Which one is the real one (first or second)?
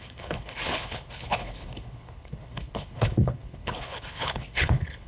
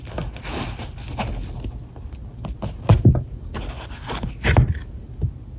second